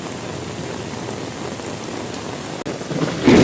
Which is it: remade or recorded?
recorded